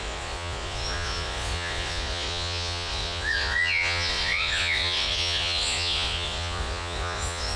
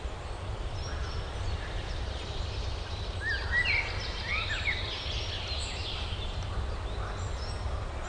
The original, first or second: second